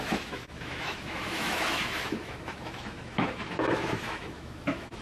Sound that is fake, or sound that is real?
fake